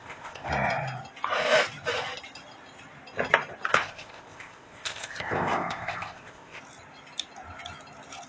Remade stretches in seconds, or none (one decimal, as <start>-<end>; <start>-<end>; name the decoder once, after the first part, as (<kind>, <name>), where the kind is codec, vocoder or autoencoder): 0.0-0.5 (codec, ZipCodec); 3.7-6.6

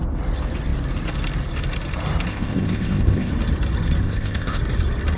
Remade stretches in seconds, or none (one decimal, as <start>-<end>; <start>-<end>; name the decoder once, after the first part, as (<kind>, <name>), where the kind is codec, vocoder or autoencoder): 2.3-3.3 (codec, ZipCodec); 4.0-4.6